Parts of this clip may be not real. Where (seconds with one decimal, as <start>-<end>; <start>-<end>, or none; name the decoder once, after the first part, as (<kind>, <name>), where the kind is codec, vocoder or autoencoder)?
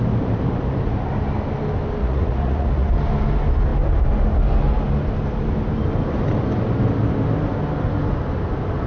2.0-2.9 (vocoder, Vocos)